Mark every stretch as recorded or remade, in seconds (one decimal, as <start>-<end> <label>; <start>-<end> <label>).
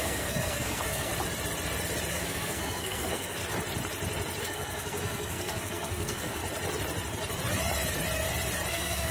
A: 0.0-1.1 remade; 1.1-2.1 recorded; 2.1-3.4 remade; 3.4-4.4 recorded; 4.4-6.4 remade; 6.4-8.7 recorded; 8.7-9.1 remade